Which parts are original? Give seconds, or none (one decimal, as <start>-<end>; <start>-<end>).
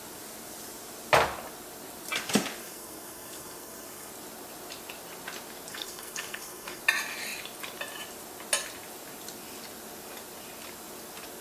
0.0-2.6; 4.1-5.7; 6.8-11.4